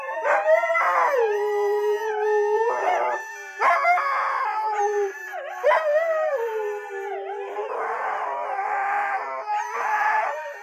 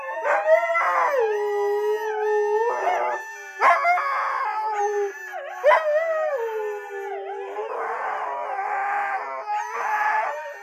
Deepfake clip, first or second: first